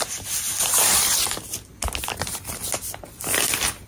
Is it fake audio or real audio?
real